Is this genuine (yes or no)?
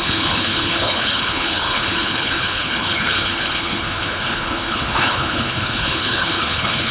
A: no